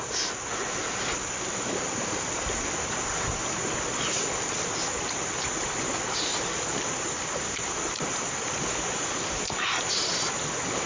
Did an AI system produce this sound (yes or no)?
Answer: no